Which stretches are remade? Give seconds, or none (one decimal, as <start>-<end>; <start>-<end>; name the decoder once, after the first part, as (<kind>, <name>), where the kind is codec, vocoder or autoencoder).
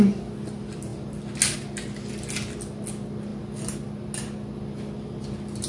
none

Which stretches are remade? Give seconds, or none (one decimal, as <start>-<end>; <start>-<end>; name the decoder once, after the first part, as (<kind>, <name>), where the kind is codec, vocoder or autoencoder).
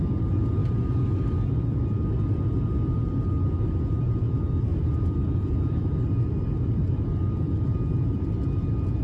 4.7-7.0 (vocoder, BigVGAN v2)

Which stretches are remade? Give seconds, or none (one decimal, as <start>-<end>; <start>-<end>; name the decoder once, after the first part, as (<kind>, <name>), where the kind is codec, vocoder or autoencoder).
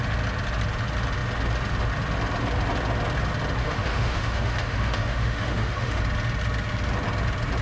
3.6-6.0 (autoencoder, DAC-VAE)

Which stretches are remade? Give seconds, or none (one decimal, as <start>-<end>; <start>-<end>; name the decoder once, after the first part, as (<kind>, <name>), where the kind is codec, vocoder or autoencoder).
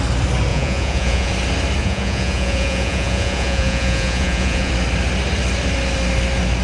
0.5-1.3 (vocoder, Vocos); 1.8-4.7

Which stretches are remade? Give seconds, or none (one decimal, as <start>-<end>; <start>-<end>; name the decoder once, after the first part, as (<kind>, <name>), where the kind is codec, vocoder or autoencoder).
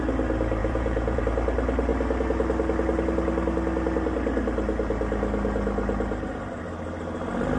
0.6-1.2 (vocoder, Vocos)